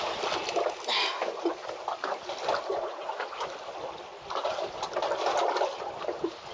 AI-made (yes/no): no